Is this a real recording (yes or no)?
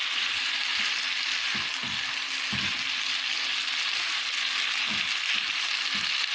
yes